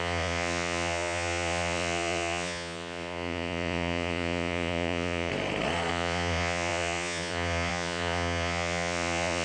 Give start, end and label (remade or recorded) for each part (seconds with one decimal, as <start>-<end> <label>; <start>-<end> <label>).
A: 0.0-5.3 remade; 5.3-5.9 recorded; 5.9-9.4 remade